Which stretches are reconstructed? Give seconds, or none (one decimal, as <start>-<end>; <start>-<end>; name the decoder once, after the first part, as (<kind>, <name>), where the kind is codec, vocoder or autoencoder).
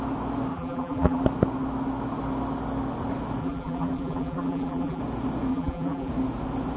0.5-1.2 (vocoder, BigVGAN v2); 3.4-5.0; 5.5-6.1